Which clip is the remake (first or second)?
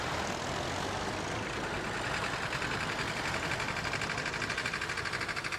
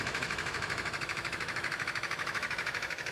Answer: second